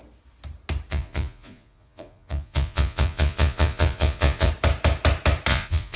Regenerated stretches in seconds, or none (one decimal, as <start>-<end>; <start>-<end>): 0.9-4.5; 5.5-6.0